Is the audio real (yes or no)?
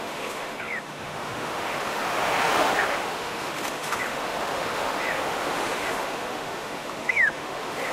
no